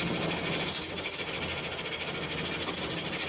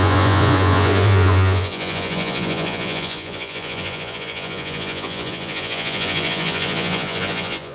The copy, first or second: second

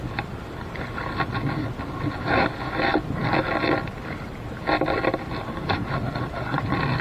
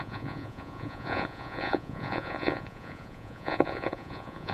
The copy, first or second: second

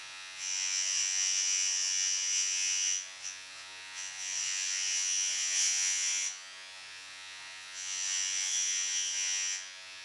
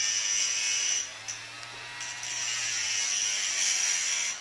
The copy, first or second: first